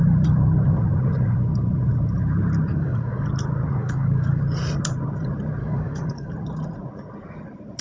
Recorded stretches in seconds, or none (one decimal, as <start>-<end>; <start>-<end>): 0.0-2.7; 3.3-3.8; 4.4-5.6; 6.3-7.8